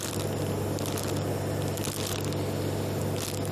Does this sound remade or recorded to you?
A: recorded